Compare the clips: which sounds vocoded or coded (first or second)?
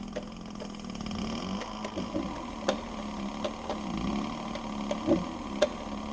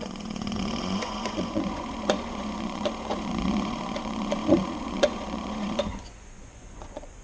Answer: second